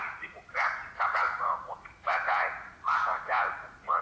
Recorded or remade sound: remade